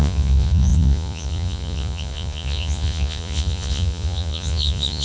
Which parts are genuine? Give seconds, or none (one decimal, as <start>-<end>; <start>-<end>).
none